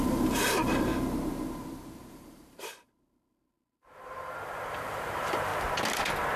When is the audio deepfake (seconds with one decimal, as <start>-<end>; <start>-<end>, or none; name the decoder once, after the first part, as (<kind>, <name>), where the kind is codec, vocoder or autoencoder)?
0.0-0.9 (vocoder, BigVGAN v2); 2.1-5.5